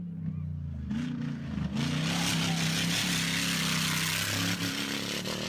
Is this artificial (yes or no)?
no